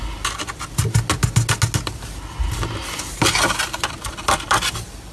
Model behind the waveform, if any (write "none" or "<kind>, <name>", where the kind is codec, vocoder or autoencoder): none